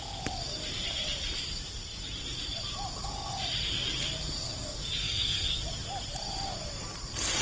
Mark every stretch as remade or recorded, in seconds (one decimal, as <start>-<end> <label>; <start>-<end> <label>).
0.0-5.0 recorded; 5.0-5.6 remade; 5.6-7.4 recorded